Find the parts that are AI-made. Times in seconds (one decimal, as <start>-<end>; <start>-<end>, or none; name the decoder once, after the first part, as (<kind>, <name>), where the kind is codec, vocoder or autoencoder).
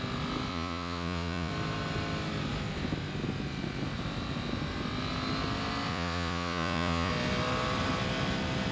0.5-1.5 (vocoder, Vocos); 5.9-7.1